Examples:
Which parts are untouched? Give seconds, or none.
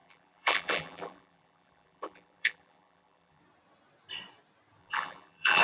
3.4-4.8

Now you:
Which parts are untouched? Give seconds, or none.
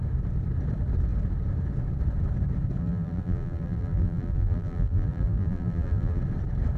0.0-2.8; 6.2-6.8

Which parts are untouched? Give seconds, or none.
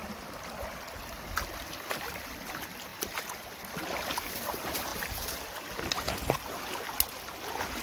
0.0-1.7; 4.9-7.8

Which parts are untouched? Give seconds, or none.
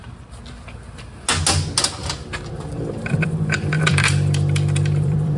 0.0-2.0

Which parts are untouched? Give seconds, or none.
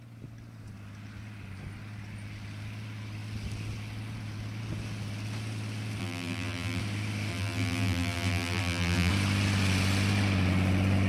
0.0-6.0; 6.8-7.3; 9.1-11.1